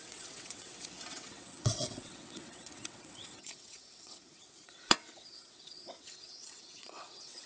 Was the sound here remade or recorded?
remade